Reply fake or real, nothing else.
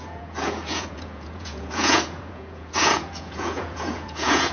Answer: fake